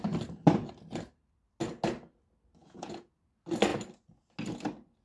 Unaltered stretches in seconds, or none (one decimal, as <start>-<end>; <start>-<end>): 0.0-2.6; 3.1-5.0